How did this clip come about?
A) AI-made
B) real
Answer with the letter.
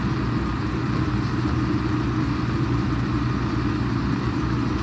B